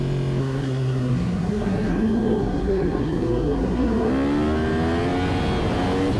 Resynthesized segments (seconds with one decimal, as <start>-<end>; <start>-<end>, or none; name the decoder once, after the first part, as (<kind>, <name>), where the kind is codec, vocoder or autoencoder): 0.4-4.1 (codec, SNAC)